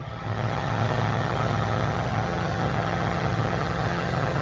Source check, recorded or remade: remade